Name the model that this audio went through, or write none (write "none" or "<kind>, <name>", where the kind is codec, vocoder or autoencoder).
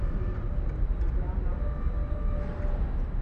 none